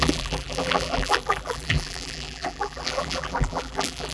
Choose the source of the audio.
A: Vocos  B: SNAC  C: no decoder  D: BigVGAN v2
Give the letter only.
D